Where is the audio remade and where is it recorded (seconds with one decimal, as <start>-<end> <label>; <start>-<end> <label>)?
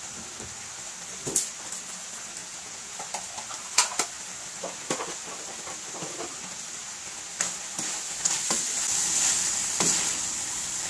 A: 0.0-2.4 recorded; 2.4-2.9 remade; 2.9-10.9 recorded